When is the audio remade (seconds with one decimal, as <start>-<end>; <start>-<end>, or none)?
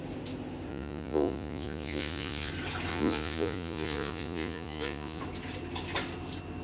0.7-2.5; 2.9-5.2